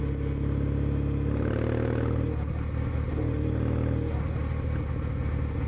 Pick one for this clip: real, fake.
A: real